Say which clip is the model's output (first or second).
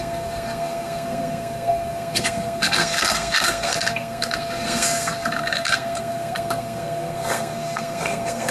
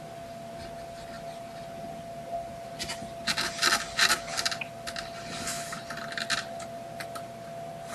first